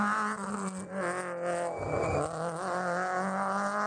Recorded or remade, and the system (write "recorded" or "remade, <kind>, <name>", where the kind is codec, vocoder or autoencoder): recorded